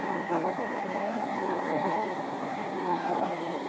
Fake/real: fake